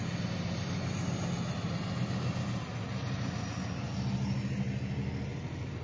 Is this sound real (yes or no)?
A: yes